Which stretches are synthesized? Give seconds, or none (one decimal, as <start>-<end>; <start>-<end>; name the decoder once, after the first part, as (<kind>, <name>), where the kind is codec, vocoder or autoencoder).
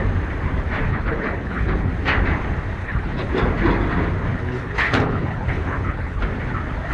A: 0.9-1.9 (codec, HILCodec); 2.8-3.3; 4.3-6.2